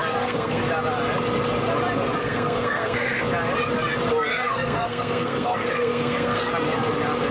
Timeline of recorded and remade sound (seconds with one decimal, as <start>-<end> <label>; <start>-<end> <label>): 0.0-0.6 remade; 0.6-2.2 recorded; 2.2-3.2 remade; 3.2-4.3 recorded; 4.3-6.5 remade; 6.5-7.3 recorded